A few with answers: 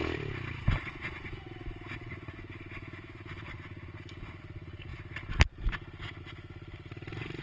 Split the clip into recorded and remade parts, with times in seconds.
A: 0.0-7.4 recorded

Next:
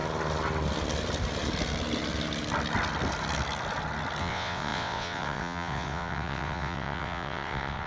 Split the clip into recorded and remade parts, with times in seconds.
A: 0.0-4.2 recorded; 4.2-7.9 remade